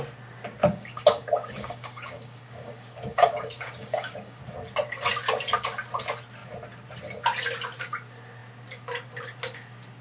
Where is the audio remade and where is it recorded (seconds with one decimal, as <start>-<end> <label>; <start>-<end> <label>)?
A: 0.0-0.6 recorded; 0.6-4.4 remade; 4.4-10.0 recorded